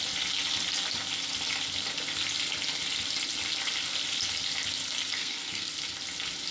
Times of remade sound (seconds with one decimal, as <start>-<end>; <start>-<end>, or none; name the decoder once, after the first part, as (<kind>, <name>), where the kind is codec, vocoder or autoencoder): 5.2-5.7 (codec, SNAC)

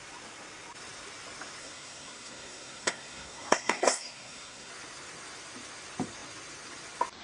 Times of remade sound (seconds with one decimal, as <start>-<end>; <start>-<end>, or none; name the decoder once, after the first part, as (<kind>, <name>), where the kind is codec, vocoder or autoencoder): 1.6-4.7 (codec, SNAC)

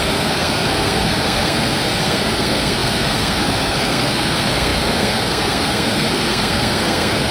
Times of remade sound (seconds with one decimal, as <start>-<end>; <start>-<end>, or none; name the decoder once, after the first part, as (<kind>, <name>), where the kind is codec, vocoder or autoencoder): 0.0-7.3 (codec, SNAC)